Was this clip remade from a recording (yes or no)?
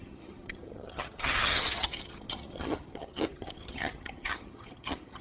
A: yes